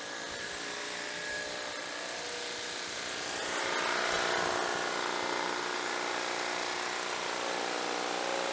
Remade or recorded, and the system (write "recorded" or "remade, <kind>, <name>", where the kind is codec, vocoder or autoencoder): recorded